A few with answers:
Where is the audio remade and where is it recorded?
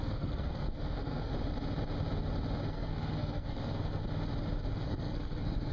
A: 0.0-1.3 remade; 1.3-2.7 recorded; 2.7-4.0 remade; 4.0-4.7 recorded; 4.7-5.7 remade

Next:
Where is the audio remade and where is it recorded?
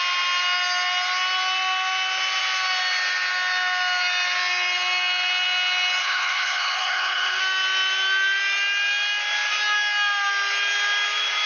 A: 0.0-6.0 recorded; 6.0-7.4 remade; 7.4-11.5 recorded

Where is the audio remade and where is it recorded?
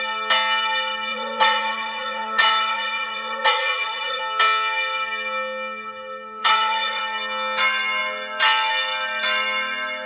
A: 0.0-1.1 recorded; 1.1-4.2 remade; 4.2-6.4 recorded; 6.4-7.0 remade; 7.0-10.1 recorded